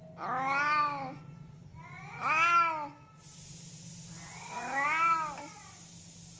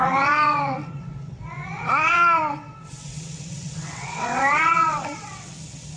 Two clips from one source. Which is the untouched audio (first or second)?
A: first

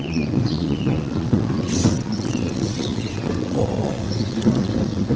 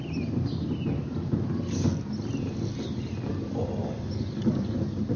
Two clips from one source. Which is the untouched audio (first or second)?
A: second